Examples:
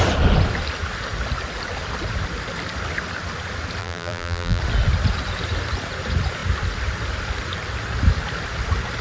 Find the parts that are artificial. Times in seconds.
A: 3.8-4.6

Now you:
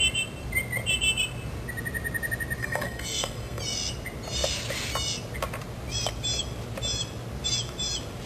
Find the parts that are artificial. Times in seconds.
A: 2.6-3.6

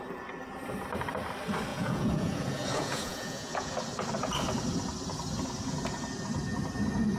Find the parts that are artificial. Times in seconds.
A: 1.7-3.7

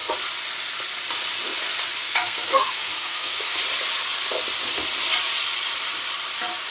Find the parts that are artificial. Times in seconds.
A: 2.0-3.6

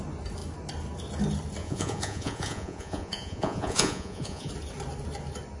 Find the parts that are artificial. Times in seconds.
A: 1.6-4.5

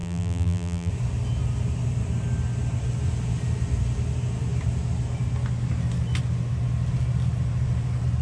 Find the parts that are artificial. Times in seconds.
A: 0.0-0.9

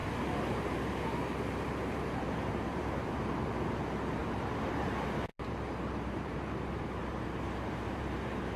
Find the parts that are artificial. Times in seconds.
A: 0.0-2.9; 4.2-4.8; 5.3-6.4; 7.0-8.6

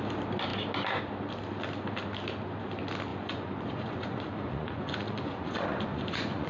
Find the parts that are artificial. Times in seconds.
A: 3.1-6.5